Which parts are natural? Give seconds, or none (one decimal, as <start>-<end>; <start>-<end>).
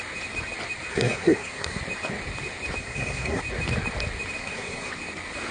0.0-0.9; 1.8-2.8; 3.4-4.4; 4.9-5.5